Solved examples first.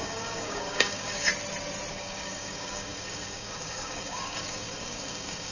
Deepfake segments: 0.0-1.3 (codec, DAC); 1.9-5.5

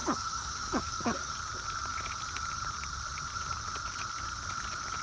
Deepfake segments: 0.0-1.3 (codec, DAC)

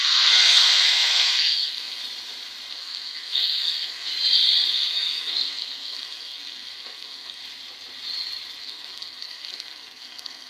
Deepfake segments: 0.0-2.0 (codec, SNAC); 2.7-4.1; 4.7-7.4; 8.6-10.5